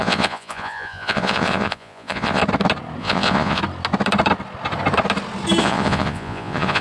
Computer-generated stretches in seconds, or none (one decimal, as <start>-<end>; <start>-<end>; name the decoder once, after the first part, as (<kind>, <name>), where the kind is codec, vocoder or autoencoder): 0.0-2.4 (vocoder, Vocos); 3.0-3.6; 5.6-6.8